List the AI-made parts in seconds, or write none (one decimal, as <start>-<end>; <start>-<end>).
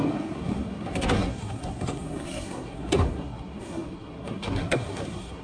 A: 0.0-5.4